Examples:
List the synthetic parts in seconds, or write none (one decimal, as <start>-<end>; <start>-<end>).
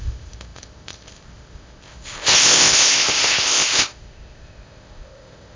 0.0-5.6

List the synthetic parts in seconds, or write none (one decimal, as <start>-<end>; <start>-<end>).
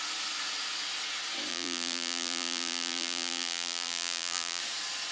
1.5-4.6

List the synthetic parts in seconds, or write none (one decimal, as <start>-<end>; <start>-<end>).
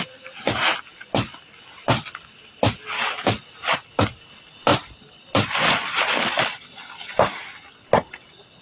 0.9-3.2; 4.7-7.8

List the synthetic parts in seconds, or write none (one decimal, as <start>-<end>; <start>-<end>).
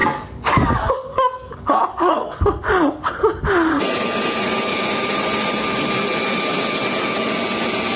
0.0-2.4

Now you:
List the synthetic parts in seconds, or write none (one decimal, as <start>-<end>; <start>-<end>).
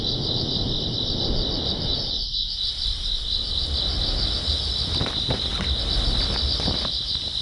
none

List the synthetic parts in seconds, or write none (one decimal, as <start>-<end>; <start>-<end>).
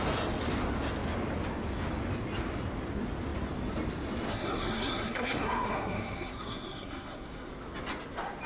4.3-7.5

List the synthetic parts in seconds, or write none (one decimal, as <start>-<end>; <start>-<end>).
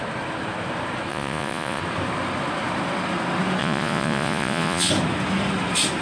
1.1-1.8; 3.6-4.9